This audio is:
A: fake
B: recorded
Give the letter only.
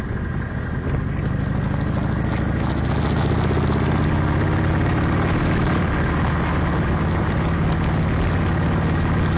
B